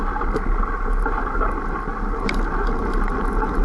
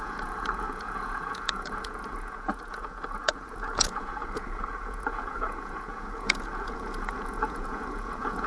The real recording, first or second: first